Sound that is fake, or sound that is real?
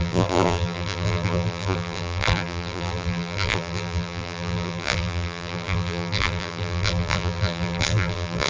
fake